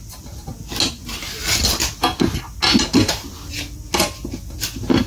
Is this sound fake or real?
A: real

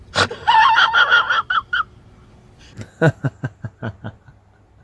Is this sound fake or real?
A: real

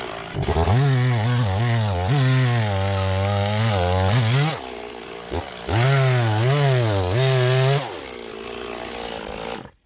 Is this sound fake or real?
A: real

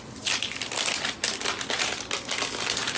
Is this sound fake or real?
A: real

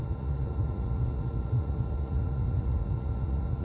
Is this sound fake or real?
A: fake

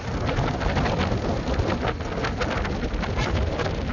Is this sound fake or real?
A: real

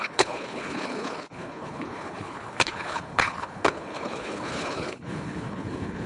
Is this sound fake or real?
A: fake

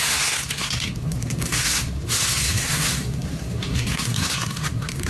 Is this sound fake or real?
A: fake